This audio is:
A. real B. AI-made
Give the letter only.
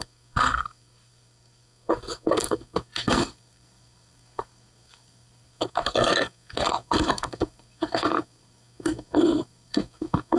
B